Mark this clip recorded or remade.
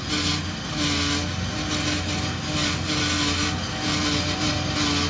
recorded